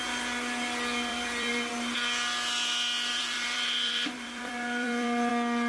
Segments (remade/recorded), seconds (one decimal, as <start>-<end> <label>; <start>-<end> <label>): 0.0-1.1 recorded; 1.1-1.7 remade; 1.7-3.1 recorded; 3.1-5.3 remade; 5.3-5.7 recorded